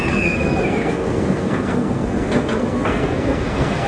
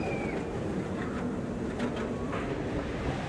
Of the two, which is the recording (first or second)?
second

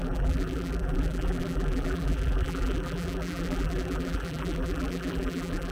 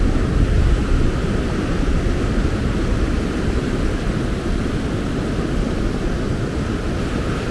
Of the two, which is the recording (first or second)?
second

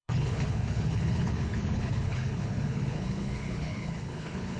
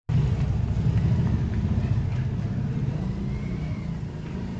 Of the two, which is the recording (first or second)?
second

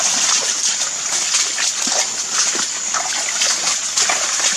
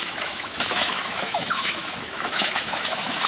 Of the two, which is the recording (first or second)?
first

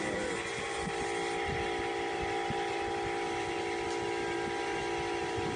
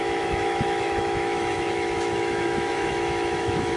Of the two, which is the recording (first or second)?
first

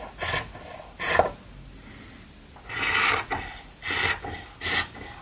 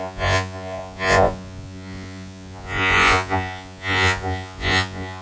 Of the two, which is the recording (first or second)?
first